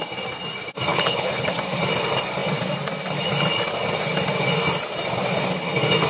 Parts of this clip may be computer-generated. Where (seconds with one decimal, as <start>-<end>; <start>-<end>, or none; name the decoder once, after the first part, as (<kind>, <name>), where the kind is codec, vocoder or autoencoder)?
0.9-1.5 (codec, HILCodec)